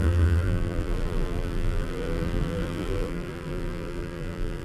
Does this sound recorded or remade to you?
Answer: remade